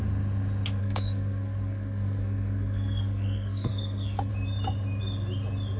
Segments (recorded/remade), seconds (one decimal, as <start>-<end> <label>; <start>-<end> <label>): 0.0-0.8 recorded; 0.8-4.3 remade; 4.3-5.8 recorded